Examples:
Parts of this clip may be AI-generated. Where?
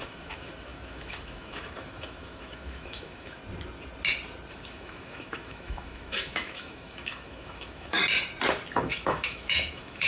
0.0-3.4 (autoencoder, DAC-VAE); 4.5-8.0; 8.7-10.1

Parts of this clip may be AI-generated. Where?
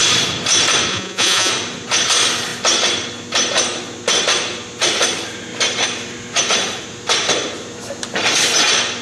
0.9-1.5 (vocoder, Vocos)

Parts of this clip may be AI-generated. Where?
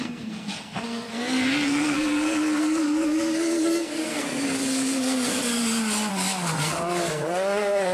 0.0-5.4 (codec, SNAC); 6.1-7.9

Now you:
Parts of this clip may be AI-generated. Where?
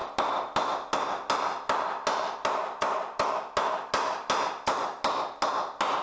none